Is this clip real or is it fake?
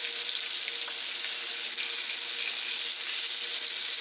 real